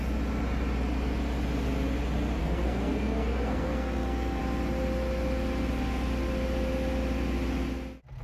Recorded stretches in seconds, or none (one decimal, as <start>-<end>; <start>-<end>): 0.0-2.4; 4.4-8.2